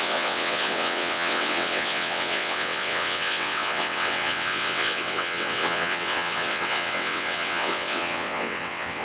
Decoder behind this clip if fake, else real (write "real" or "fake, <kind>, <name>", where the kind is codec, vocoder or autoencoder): fake, vocoder, WaveNeXt